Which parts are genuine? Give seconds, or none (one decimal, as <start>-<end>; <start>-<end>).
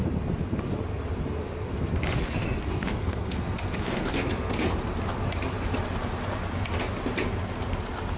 0.0-2.4; 4.5-8.2